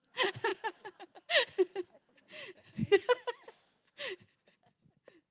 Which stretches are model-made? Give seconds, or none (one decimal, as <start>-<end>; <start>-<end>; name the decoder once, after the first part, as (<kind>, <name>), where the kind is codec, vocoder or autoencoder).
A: 2.8-4.0 (autoencoder, DAC-VAE)